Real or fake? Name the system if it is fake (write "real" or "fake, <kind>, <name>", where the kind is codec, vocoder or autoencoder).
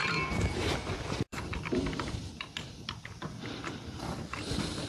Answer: fake, vocoder, BigVGAN v2